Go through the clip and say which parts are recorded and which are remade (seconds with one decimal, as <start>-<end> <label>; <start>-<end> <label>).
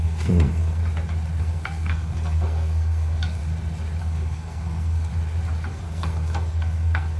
0.0-0.8 remade; 0.8-1.4 recorded; 1.4-3.4 remade; 3.4-4.0 recorded; 4.0-5.1 remade; 5.1-5.7 recorded; 5.7-7.2 remade